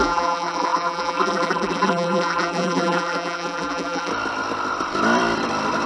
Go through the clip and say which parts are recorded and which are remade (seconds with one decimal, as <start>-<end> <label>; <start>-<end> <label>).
0.0-4.1 remade; 4.1-5.9 recorded